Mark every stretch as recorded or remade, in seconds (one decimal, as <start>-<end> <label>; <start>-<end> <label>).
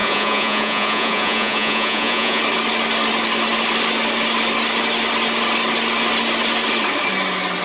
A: 0.0-2.4 remade; 2.4-7.6 recorded